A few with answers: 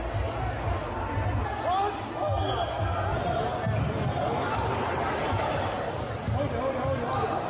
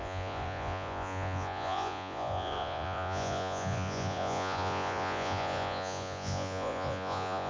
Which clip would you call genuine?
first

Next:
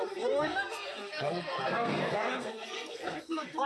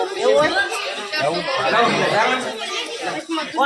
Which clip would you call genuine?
second